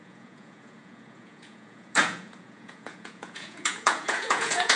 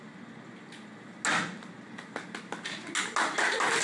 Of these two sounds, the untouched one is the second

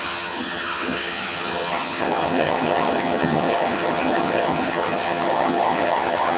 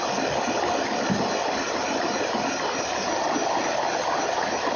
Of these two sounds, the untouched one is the second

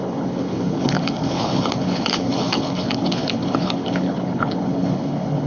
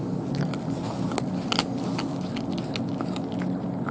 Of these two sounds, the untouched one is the second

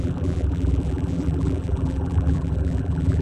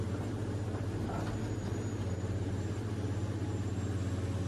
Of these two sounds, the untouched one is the second